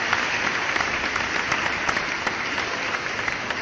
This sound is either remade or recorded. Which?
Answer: recorded